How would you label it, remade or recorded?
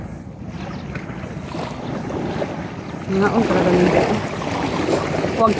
recorded